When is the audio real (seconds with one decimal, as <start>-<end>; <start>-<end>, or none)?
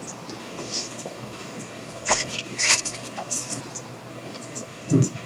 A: 0.0-0.4; 3.6-4.1